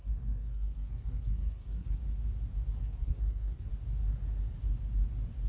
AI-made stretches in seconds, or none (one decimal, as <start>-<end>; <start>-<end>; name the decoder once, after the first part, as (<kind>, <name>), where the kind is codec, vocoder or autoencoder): 0.0-2.0 (codec, SNAC); 2.8-3.7